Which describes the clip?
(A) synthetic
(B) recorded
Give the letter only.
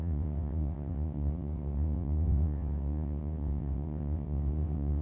A